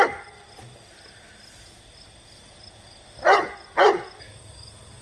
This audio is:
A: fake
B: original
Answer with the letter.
B